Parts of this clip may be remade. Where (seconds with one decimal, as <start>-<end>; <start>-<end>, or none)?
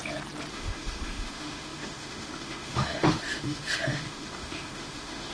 0.5-5.3